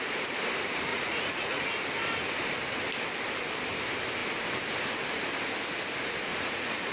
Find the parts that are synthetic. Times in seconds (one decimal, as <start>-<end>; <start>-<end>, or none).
0.9-1.6; 6.3-6.9